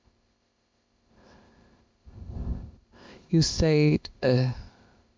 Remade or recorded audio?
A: remade